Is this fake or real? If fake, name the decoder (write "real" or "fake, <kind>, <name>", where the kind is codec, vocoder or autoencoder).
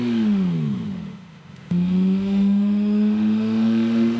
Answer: fake, autoencoder, DAC-VAE